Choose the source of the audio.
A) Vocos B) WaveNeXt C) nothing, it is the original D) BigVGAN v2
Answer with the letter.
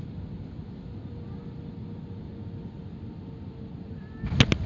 C